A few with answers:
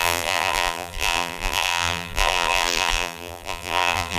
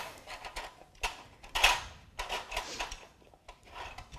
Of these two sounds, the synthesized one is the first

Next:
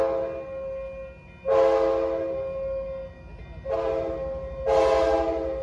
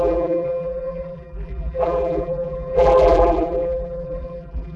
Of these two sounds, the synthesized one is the second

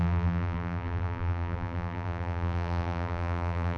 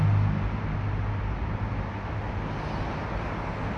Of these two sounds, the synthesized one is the first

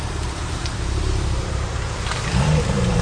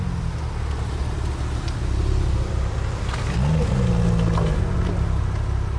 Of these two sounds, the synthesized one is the first